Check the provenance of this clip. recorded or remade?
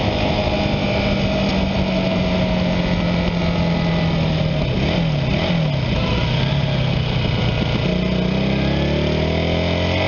recorded